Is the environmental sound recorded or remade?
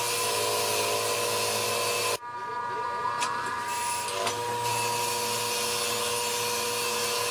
recorded